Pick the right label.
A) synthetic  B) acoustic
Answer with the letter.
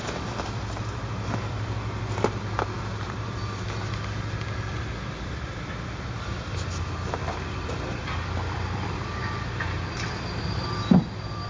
A